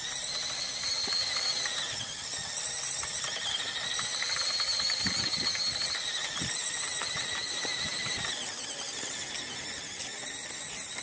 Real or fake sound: real